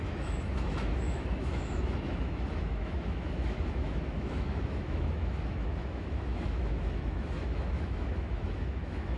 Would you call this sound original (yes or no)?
no